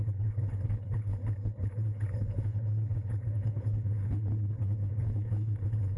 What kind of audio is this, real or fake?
fake